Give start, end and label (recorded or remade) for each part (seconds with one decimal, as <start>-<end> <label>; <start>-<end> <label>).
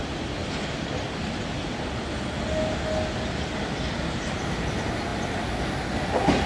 0.0-6.5 recorded